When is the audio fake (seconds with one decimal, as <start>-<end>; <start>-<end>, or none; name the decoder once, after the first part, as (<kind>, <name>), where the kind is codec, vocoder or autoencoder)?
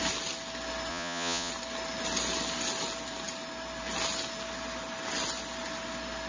0.9-1.5 (vocoder, Vocos)